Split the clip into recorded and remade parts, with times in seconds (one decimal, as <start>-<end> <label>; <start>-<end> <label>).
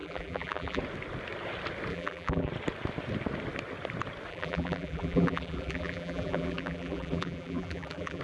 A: 0.0-0.8 remade; 0.8-1.9 recorded; 1.9-2.5 remade; 2.5-4.3 recorded; 4.3-8.2 remade